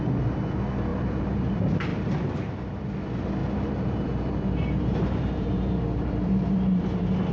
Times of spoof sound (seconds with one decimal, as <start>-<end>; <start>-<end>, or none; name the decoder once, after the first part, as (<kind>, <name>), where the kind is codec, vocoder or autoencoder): 0.9-1.5 (vocoder, BigVGAN v2); 3.4-7.3